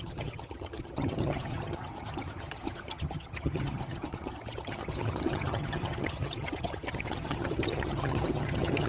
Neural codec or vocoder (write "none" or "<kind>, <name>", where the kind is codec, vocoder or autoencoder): vocoder, HiFi-GAN